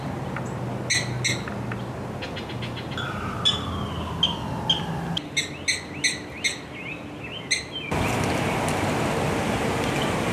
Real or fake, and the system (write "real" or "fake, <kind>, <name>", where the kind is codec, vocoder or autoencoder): real